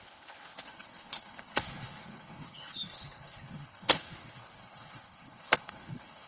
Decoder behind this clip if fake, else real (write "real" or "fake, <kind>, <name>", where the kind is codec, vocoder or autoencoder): fake, codec, HILCodec